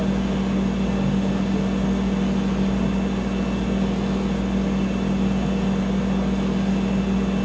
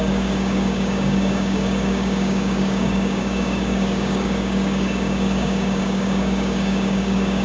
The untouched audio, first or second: first